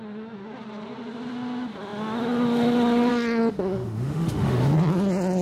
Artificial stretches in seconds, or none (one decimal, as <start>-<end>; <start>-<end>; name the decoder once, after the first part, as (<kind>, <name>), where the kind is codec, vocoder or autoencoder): 3.5-4.7 (autoencoder, DAC-VAE)